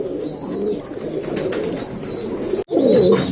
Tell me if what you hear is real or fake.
real